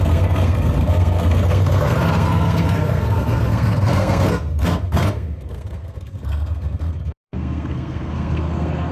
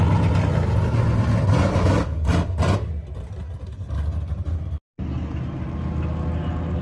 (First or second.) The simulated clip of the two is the first